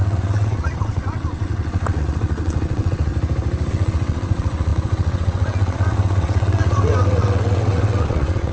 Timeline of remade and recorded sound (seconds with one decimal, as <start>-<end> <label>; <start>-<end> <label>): 0.0-3.1 remade; 3.1-3.7 recorded; 3.7-8.5 remade